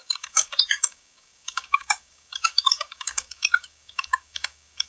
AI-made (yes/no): yes